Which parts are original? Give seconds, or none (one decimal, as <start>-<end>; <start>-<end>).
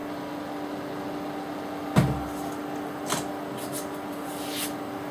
0.0-5.1